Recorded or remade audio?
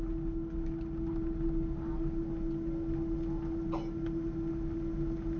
recorded